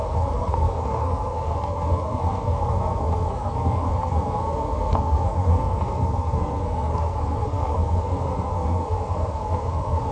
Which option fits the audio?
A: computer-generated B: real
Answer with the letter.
A